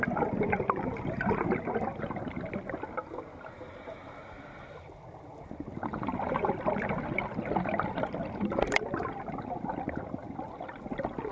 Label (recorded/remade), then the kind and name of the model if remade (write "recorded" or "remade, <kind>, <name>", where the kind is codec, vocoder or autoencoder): recorded